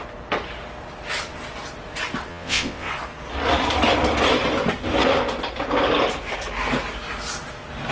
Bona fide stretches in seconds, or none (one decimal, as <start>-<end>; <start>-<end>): 0.0-2.3; 2.9-7.9